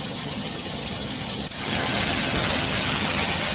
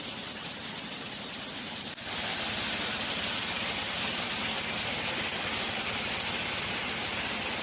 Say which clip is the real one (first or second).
second